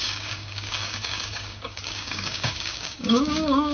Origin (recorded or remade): remade